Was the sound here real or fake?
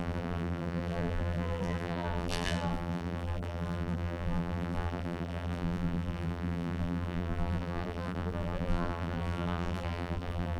fake